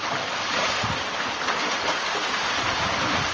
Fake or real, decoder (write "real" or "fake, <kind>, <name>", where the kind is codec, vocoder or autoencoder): real